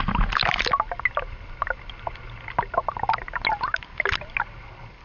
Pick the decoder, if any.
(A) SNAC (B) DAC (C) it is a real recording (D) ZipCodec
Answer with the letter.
C